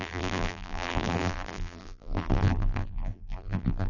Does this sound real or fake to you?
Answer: fake